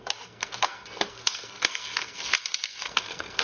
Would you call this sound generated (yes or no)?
yes